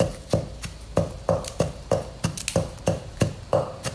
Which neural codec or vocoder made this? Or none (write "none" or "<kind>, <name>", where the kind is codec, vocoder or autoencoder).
none